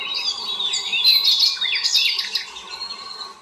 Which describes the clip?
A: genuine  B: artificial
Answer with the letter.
A